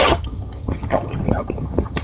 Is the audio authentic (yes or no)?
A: no